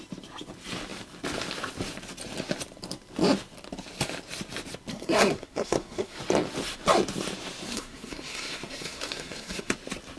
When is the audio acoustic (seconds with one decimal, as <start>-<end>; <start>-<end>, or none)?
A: 0.0-4.9; 6.2-7.7; 9.7-10.2